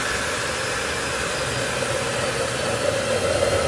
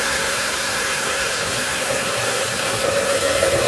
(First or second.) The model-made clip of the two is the second